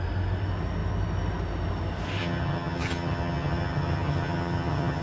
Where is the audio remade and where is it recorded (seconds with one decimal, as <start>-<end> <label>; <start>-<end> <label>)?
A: 0.0-2.2 recorded; 2.2-5.0 remade